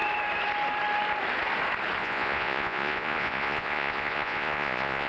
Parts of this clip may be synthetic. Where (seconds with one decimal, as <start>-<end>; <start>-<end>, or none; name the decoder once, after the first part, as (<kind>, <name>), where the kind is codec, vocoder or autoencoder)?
2.0-5.1 (vocoder, Vocos)